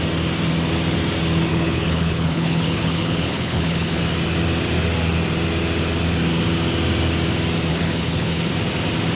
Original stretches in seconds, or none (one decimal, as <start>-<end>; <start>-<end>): 0.0-1.5; 4.0-7.7; 8.5-9.2